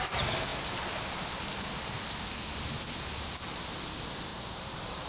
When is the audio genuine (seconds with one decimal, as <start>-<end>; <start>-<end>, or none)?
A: 0.0-4.3

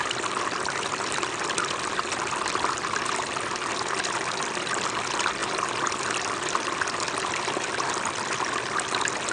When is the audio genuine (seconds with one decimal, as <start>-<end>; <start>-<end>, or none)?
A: 0.0-9.3

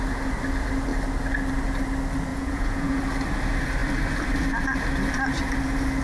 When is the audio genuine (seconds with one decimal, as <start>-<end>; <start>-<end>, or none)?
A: 0.0-2.3; 3.0-6.0